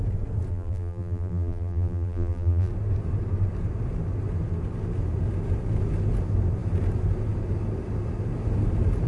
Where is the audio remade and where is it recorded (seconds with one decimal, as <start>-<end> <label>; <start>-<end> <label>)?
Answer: 0.0-0.5 recorded; 0.5-2.7 remade; 2.7-9.1 recorded